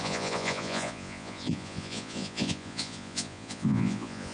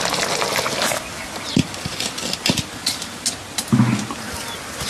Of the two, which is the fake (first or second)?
first